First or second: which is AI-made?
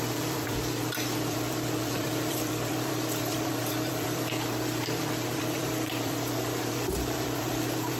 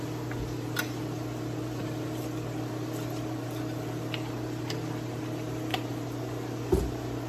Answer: first